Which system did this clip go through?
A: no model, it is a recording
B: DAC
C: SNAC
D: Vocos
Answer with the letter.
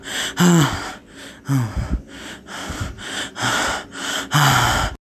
A